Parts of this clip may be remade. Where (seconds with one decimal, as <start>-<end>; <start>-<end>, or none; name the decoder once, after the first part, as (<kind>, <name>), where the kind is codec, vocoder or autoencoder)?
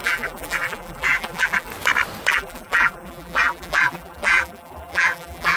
0.0-1.7 (vocoder, BigVGAN v2); 2.3-5.6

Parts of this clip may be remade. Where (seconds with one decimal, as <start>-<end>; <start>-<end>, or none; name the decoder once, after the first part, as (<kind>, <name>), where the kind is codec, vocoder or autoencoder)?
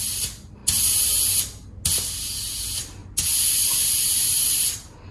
0.0-0.6 (vocoder, BigVGAN v2); 2.6-3.0; 4.1-5.1